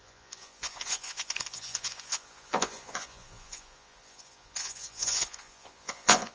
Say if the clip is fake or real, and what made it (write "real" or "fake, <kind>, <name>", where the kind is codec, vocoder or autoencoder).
fake, vocoder, Vocos